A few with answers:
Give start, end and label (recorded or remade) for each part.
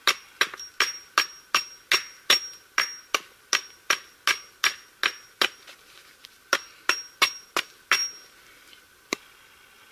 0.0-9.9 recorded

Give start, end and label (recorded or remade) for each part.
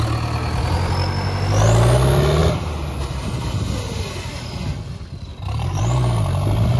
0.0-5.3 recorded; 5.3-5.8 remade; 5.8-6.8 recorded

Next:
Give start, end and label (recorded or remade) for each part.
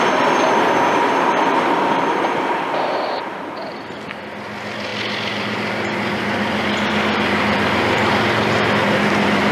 0.0-9.5 recorded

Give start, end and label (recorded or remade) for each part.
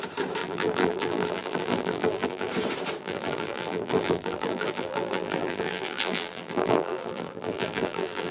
0.0-0.4 recorded; 0.4-2.5 remade; 2.5-3.0 recorded; 3.0-8.3 remade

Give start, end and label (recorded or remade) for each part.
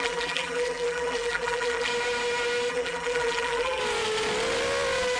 0.0-1.9 remade; 1.9-2.7 recorded; 2.7-3.8 remade; 3.8-5.2 recorded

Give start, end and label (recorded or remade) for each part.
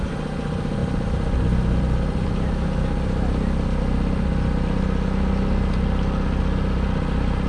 0.0-7.5 recorded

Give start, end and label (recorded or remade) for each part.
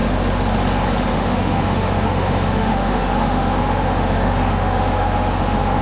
0.0-1.1 recorded; 1.1-5.8 remade